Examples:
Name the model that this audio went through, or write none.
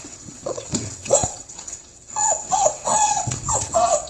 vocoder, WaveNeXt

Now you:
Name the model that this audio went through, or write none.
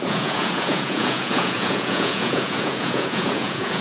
vocoder, Vocos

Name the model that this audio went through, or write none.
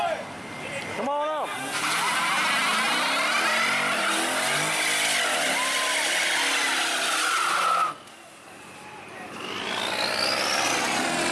none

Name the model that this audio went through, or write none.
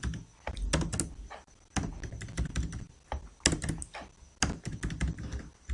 none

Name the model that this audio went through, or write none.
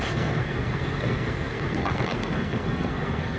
codec, SNAC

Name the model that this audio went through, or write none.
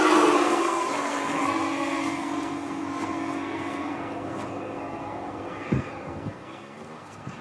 codec, SNAC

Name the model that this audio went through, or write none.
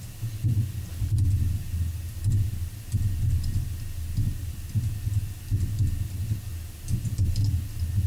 none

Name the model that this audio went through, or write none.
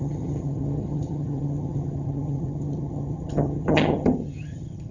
vocoder, HiFi-GAN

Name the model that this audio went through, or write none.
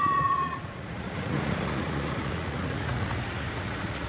vocoder, Vocos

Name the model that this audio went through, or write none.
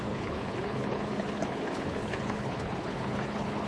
codec, HILCodec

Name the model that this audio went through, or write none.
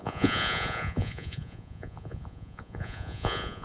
vocoder, Vocos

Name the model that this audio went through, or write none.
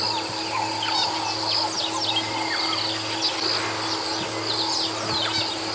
none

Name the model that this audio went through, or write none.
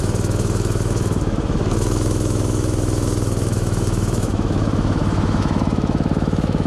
autoencoder, DAC-VAE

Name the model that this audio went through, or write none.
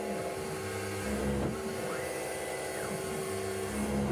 none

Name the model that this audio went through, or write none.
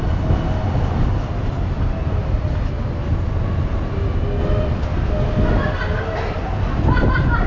none